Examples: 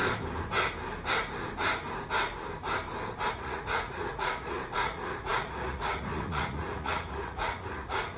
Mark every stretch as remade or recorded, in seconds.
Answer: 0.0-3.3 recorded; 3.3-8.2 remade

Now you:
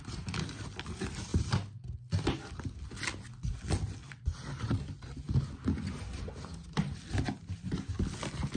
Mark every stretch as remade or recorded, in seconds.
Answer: 0.0-8.6 recorded

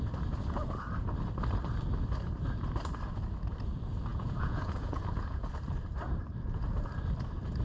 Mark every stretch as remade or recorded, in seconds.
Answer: 0.0-4.1 recorded; 4.1-5.5 remade; 5.5-7.6 recorded

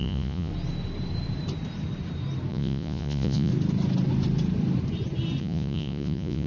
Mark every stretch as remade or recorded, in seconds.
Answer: 0.0-0.5 remade; 0.5-2.5 recorded; 2.5-3.5 remade; 3.5-5.4 recorded; 5.4-6.5 remade

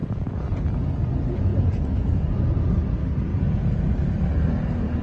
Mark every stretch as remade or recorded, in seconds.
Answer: 0.0-0.6 remade; 0.6-1.5 recorded; 1.5-2.7 remade; 2.7-3.3 recorded; 3.3-3.8 remade; 3.8-5.0 recorded